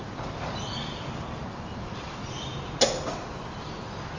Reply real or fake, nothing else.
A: real